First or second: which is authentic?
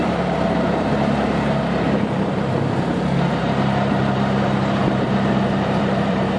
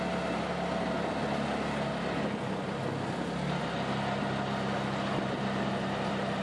second